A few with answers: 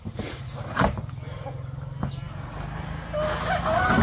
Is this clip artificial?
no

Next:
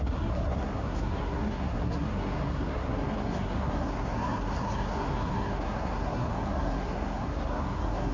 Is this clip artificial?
yes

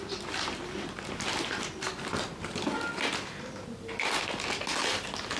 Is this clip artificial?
no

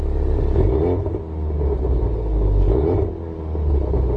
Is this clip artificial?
no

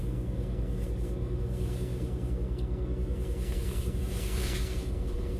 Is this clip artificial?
yes